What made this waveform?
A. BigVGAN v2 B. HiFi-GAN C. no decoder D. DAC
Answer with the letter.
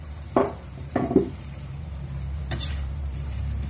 A